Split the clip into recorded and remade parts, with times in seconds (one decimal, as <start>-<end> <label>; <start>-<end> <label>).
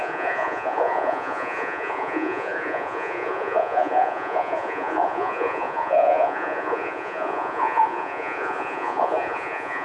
0.0-9.8 remade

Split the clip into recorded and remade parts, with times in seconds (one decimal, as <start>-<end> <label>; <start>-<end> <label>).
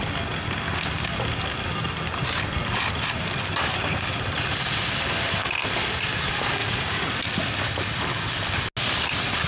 0.0-6.6 recorded; 6.6-7.2 remade; 7.2-9.5 recorded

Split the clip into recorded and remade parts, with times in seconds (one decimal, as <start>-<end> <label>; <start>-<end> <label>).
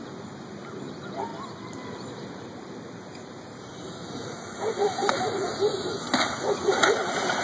0.0-7.4 remade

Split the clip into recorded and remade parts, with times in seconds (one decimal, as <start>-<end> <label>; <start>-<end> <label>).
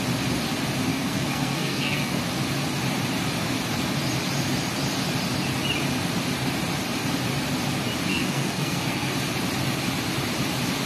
0.0-0.9 recorded; 0.9-2.2 remade; 2.2-8.1 recorded; 8.1-9.1 remade; 9.1-10.9 recorded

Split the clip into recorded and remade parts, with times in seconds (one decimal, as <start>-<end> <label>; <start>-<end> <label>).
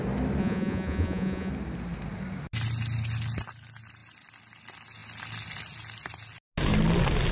0.0-0.4 recorded; 0.4-1.5 remade; 1.5-7.3 recorded